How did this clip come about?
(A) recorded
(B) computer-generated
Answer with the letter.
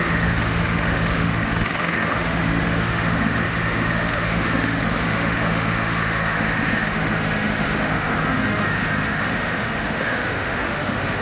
B